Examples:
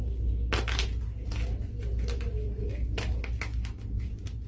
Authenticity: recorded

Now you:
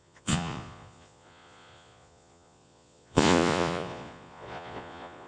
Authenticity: remade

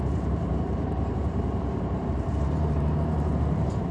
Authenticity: remade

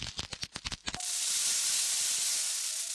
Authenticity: recorded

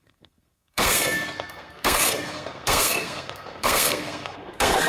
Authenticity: remade